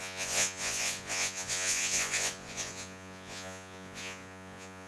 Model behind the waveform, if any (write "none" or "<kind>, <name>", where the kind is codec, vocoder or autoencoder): vocoder, Vocos